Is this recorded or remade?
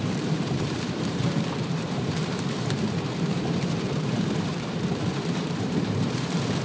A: remade